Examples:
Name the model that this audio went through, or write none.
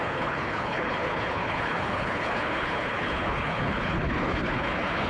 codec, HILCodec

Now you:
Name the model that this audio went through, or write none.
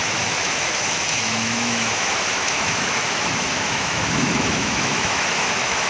autoencoder, DAC-VAE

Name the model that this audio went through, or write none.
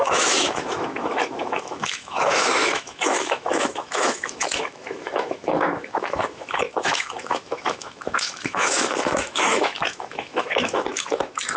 autoencoder, DAC-VAE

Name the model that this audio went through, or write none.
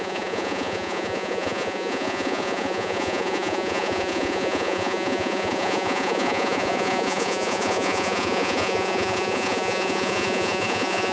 vocoder, Vocos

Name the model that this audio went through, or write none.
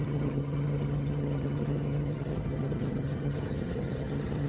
vocoder, HiFi-GAN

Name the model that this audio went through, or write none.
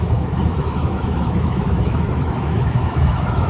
autoencoder, DAC-VAE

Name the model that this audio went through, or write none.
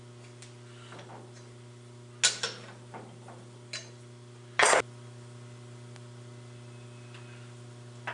none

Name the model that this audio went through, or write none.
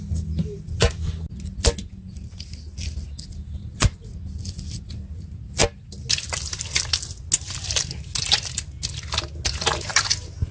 none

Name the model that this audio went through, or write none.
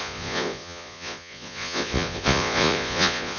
vocoder, Vocos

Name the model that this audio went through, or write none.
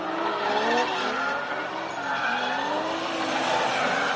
none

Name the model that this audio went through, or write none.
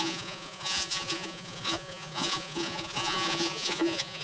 vocoder, Vocos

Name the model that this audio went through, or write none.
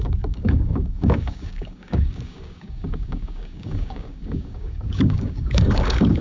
codec, DAC